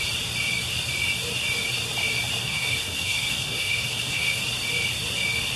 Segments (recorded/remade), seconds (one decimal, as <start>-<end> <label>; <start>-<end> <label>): 0.0-2.4 recorded; 2.4-4.4 remade; 4.4-5.6 recorded